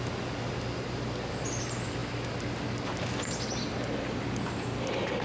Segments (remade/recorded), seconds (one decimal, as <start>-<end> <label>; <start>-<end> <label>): 0.0-5.2 recorded